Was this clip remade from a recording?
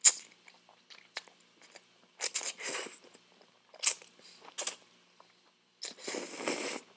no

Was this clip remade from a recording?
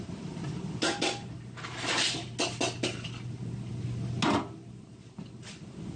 no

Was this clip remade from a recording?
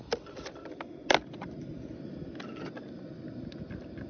no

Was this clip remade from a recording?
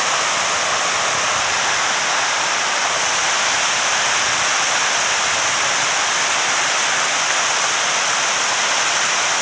no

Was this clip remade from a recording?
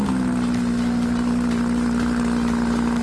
no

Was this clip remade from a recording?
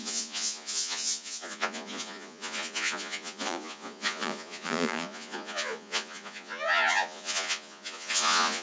yes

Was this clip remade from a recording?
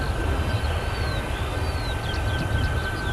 no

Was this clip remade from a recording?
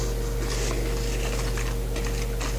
no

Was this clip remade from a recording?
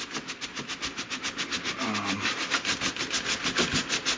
no